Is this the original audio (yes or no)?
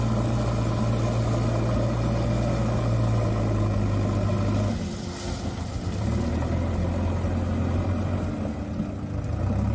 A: yes